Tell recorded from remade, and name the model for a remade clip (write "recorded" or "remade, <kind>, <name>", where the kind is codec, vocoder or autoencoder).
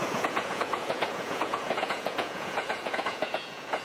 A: remade, vocoder, Vocos